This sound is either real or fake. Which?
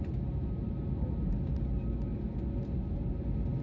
real